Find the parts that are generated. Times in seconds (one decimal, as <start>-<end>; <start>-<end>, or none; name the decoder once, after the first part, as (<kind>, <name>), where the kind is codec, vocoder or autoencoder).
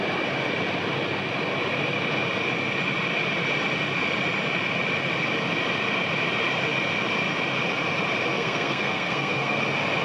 8.3-9.6 (codec, SNAC)